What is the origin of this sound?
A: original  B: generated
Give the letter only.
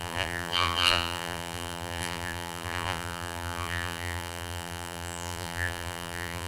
B